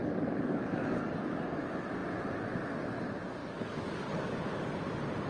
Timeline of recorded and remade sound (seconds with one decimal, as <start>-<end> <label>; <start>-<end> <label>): 0.0-1.6 remade; 1.6-3.4 recorded; 3.4-4.7 remade; 4.7-5.3 recorded

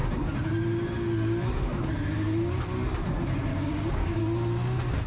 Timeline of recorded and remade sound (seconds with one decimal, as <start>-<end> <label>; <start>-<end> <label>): 0.0-3.5 recorded; 3.5-4.2 remade; 4.2-5.1 recorded

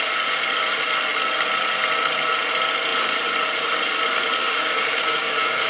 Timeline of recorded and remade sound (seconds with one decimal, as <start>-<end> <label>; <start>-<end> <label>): 0.0-4.4 recorded; 4.4-5.7 remade